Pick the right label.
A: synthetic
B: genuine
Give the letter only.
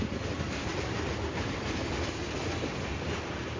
B